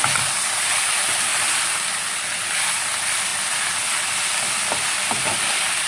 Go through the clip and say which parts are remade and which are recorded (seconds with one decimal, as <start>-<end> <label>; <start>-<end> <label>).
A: 0.0-1.3 recorded; 1.3-1.8 remade; 1.8-5.9 recorded